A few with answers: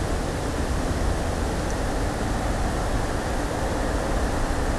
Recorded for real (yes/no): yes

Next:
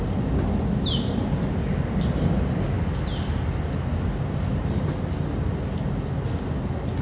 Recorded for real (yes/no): yes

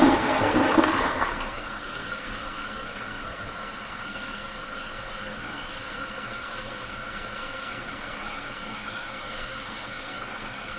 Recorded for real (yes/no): no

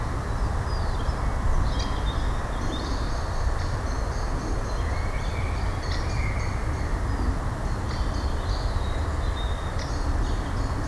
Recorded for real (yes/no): yes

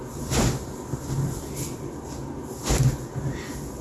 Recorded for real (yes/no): yes